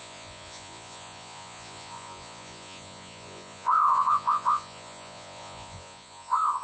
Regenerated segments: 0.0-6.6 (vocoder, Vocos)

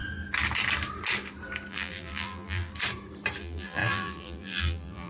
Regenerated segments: 1.7-2.7 (vocoder, BigVGAN v2); 3.4-5.1

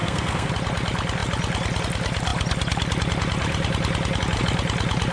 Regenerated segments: 0.0-0.5 (codec, SNAC)

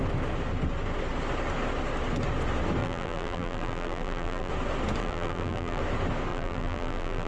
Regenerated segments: 2.8-4.5 (vocoder, BigVGAN v2); 5.0-5.8; 6.3-7.3